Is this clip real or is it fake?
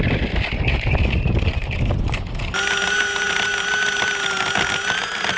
real